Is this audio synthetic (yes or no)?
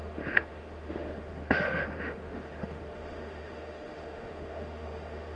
yes